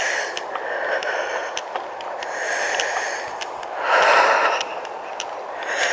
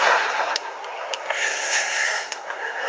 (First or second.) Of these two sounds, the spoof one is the second